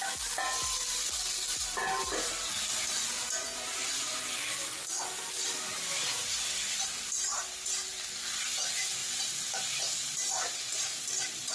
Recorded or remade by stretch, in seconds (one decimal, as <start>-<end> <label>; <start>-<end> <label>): 0.0-9.0 recorded; 9.0-11.5 remade